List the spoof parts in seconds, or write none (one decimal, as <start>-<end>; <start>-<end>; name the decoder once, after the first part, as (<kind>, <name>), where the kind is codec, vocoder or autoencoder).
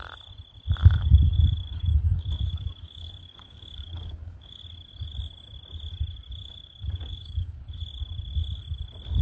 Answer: 0.8-4.6 (codec, DAC); 6.4-7.6